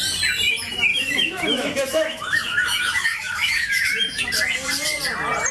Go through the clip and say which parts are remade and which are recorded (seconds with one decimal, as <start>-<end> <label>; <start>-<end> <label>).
0.0-0.9 recorded; 0.9-4.2 remade; 4.2-5.5 recorded